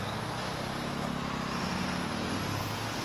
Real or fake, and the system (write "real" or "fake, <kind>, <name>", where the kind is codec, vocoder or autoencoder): real